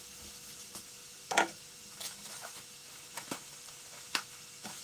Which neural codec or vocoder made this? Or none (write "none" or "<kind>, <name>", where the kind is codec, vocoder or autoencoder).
autoencoder, DAC-VAE